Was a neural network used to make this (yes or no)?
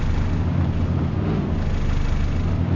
no